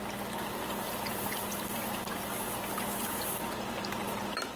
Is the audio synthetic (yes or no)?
no